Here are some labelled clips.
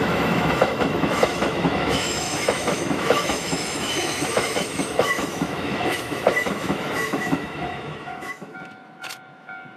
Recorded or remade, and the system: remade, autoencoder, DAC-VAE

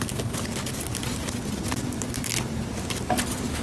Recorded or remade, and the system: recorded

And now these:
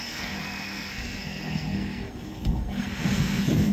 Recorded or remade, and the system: remade, codec, SNAC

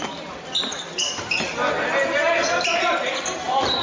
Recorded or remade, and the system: recorded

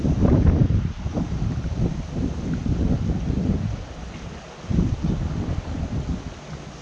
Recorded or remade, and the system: recorded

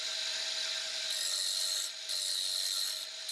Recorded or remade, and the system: recorded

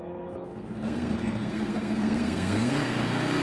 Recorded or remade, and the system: remade, codec, SNAC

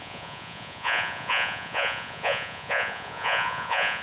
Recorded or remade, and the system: remade, vocoder, Vocos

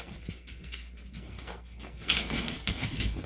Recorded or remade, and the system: remade, codec, SNAC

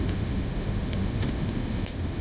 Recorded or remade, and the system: remade, autoencoder, DAC-VAE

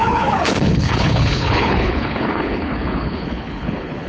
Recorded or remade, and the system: remade, codec, HILCodec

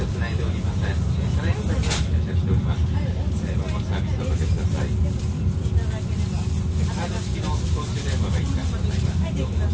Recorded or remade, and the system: recorded